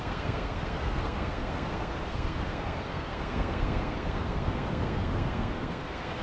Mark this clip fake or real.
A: fake